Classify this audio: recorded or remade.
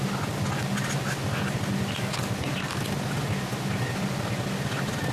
recorded